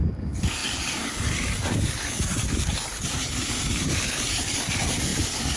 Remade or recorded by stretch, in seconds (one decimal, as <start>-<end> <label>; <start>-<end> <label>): 0.0-5.6 remade